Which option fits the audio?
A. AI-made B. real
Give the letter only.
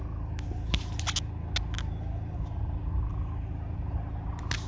B